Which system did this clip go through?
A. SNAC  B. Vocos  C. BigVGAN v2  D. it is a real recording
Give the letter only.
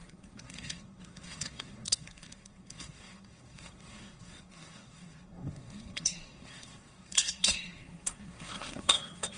A